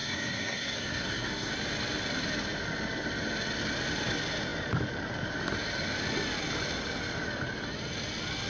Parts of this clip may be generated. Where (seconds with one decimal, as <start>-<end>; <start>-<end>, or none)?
0.0-1.5